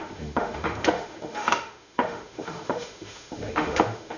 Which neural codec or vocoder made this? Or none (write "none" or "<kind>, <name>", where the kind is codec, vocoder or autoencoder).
autoencoder, DAC-VAE